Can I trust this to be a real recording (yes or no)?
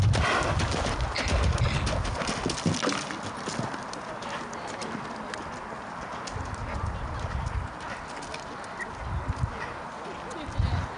yes